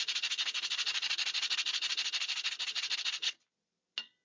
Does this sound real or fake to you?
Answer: real